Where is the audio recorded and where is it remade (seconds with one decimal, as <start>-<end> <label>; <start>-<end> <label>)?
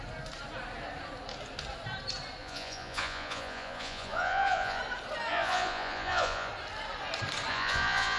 0.0-2.4 recorded; 2.4-4.8 remade; 4.8-5.3 recorded; 5.3-6.5 remade; 6.5-7.5 recorded; 7.5-8.2 remade